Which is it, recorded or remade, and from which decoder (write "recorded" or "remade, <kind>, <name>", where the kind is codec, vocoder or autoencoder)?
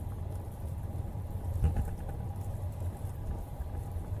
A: recorded